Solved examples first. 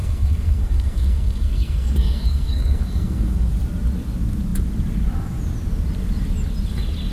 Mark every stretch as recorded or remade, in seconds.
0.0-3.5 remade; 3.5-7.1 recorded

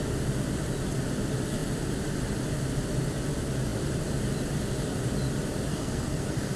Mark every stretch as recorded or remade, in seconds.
0.0-5.7 recorded; 5.7-6.6 remade

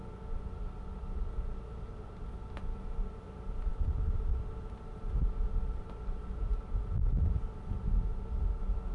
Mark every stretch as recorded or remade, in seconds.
0.0-8.9 recorded

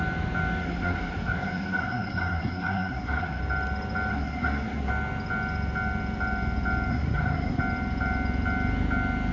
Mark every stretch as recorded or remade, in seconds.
0.0-0.6 recorded; 0.6-3.4 remade; 3.4-4.1 recorded; 4.1-4.9 remade; 4.9-6.9 recorded; 6.9-7.6 remade; 7.6-9.3 recorded

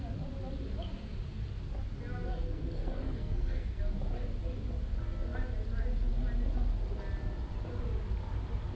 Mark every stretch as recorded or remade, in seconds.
0.0-2.3 recorded; 2.3-3.8 remade; 3.8-8.8 recorded